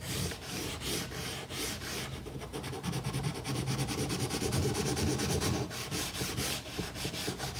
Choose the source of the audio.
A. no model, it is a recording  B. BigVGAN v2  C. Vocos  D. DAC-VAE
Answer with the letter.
B